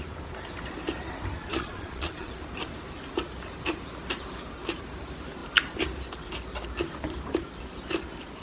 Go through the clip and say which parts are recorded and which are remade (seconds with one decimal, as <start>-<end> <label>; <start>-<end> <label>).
0.0-1.4 recorded; 1.4-2.3 remade; 2.3-8.4 recorded